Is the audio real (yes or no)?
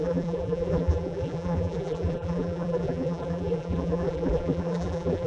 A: no